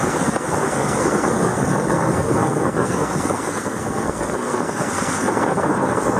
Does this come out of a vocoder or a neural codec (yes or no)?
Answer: yes